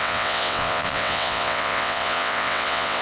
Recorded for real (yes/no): no